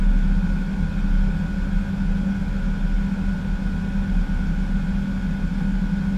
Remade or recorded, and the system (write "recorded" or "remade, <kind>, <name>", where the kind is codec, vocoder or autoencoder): recorded